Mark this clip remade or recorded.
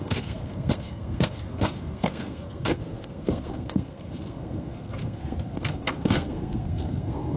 remade